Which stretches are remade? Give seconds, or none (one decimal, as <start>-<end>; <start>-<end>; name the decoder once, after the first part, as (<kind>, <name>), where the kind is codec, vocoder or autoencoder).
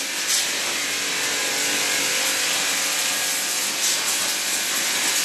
none